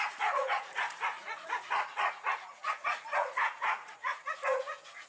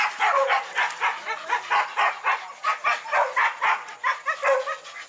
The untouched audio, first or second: second